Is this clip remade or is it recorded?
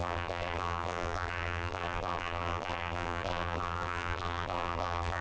remade